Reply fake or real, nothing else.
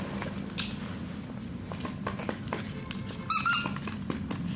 real